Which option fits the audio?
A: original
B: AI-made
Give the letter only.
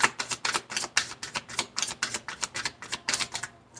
A